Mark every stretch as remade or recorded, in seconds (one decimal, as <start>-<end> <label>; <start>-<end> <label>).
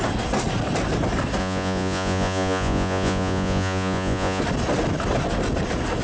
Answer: 0.0-1.4 recorded; 1.4-4.4 remade; 4.4-6.0 recorded